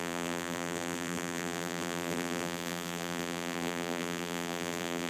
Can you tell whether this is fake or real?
fake